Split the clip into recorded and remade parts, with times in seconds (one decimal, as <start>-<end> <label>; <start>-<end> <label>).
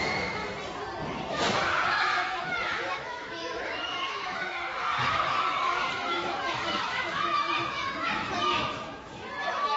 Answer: 0.0-0.4 remade; 0.4-1.3 recorded; 1.3-9.8 remade